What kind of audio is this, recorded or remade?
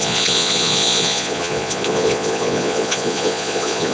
remade